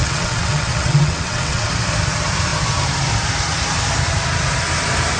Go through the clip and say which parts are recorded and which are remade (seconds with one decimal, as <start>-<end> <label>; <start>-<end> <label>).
0.0-1.7 remade; 1.7-5.2 recorded